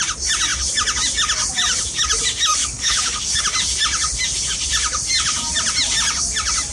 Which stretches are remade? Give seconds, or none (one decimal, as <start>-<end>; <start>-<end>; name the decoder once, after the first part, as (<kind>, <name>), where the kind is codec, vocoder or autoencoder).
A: 2.6-3.4 (codec, DAC)